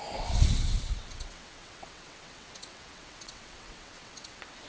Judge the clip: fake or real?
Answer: fake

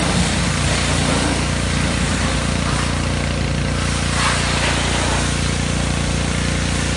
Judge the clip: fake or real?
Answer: real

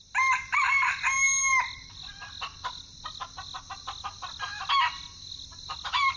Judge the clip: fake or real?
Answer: real